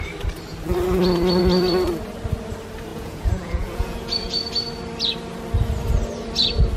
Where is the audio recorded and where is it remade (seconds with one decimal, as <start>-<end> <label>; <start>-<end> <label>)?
0.0-2.9 recorded; 2.9-4.5 remade; 4.5-6.8 recorded